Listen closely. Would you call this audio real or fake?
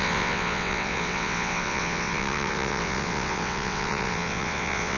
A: fake